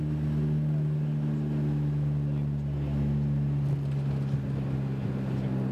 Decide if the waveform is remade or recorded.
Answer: recorded